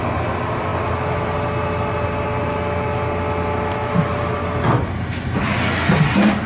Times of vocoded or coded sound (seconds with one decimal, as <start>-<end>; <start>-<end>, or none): none